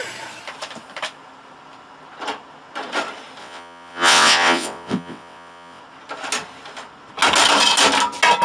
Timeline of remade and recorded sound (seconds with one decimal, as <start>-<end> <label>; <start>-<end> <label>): 0.0-3.4 recorded; 3.4-5.8 remade; 5.8-8.4 recorded